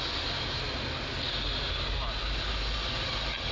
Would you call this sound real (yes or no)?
yes